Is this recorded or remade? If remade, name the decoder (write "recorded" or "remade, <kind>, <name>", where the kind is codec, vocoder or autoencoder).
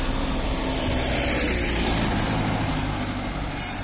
recorded